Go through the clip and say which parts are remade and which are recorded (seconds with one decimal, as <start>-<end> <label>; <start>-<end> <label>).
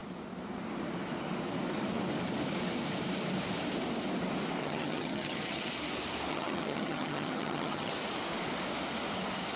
0.0-4.6 recorded; 4.6-5.7 remade; 5.7-6.3 recorded; 6.3-7.9 remade; 7.9-9.6 recorded